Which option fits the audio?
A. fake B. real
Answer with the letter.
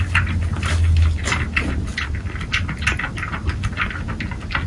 B